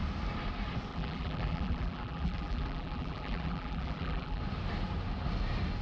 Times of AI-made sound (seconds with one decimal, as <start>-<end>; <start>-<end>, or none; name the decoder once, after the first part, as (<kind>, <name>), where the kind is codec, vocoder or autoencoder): 0.9-4.4 (vocoder, BigVGAN v2)